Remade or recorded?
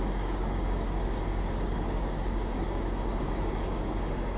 remade